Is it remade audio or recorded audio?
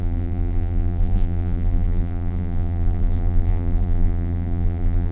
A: remade